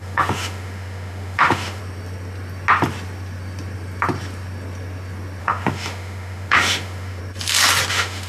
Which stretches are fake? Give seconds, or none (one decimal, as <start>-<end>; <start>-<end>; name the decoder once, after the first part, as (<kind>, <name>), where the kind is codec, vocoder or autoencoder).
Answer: 0.0-1.8 (autoencoder, DAC-VAE); 5.4-7.2; 7.9-8.3